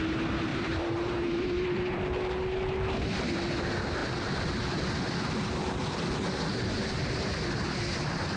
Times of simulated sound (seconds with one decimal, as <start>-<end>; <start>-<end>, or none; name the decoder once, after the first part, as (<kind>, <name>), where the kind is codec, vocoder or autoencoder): 0.5-2.0 (vocoder, BigVGAN v2)